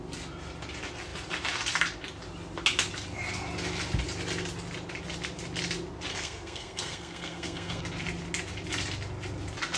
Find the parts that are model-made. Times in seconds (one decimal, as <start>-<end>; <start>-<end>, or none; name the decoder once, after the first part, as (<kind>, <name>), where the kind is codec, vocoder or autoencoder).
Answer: 6.1-7.8 (codec, SNAC)